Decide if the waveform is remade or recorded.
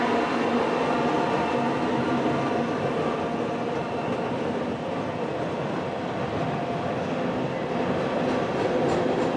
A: recorded